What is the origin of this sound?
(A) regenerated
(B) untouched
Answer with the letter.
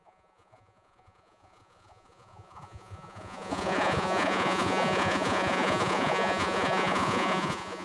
A